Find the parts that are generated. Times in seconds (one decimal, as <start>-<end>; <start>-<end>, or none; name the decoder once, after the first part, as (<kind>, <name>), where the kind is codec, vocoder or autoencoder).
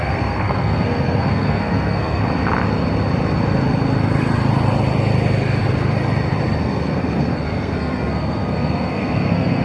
0.0-2.2 (codec, SNAC); 6.6-9.6